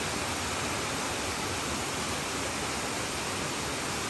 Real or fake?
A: real